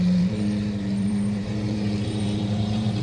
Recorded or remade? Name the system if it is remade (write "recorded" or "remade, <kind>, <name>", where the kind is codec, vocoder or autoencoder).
remade, vocoder, BigVGAN v2